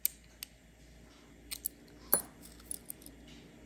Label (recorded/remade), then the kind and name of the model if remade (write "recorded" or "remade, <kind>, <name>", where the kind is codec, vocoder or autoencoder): recorded